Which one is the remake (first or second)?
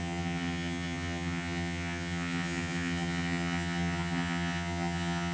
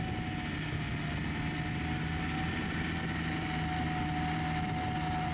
first